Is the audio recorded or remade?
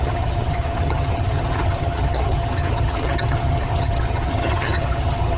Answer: remade